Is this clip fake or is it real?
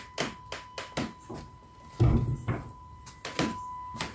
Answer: real